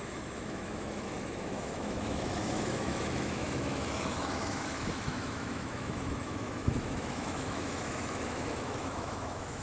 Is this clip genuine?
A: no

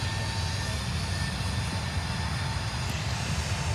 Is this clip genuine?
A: yes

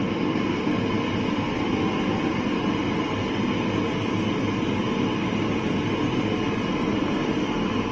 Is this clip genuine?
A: yes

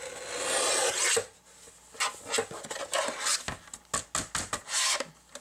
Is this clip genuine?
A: yes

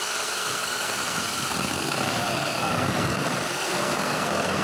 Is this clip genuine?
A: no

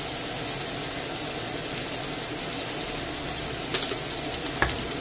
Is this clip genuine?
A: yes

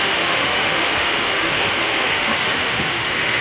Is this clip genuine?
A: no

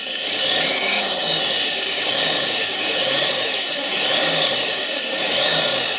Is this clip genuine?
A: no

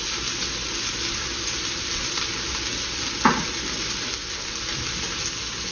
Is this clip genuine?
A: yes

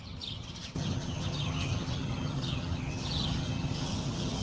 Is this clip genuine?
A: no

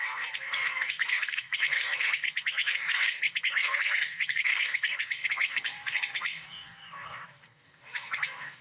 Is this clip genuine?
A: no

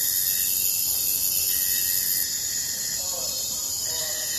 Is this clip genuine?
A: yes